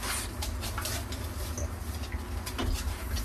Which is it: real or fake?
real